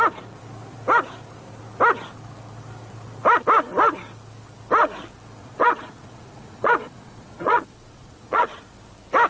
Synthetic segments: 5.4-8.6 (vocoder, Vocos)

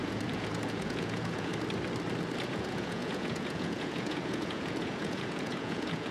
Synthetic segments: 0.0-1.5 (vocoder, Vocos); 2.5-6.1